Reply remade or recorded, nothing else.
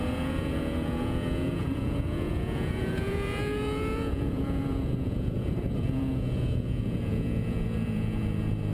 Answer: remade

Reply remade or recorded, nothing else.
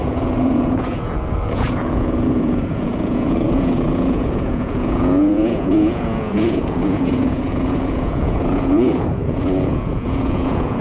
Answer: remade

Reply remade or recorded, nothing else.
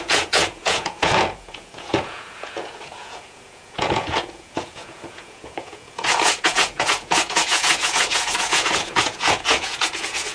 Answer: remade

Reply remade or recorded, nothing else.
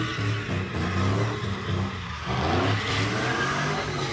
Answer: recorded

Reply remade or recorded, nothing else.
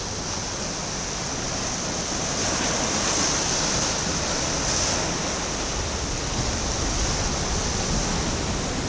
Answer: recorded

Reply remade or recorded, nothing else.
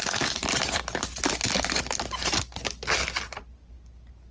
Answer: recorded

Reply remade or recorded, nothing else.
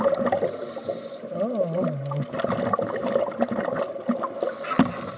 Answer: recorded